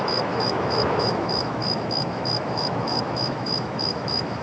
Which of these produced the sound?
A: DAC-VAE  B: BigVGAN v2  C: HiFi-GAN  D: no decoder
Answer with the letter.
A